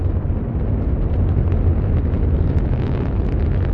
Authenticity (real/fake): real